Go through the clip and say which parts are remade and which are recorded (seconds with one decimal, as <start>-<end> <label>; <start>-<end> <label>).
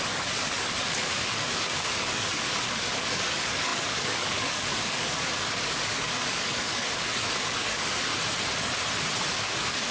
0.0-8.1 remade; 8.1-9.3 recorded; 9.3-9.9 remade